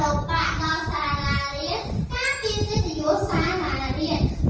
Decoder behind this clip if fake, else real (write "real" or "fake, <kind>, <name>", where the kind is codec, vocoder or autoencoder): real